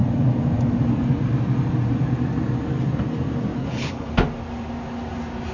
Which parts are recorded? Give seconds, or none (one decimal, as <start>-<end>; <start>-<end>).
0.0-3.6; 4.1-5.5